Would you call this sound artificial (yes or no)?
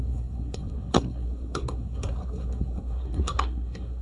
yes